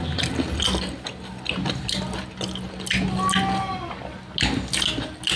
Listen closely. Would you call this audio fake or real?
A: real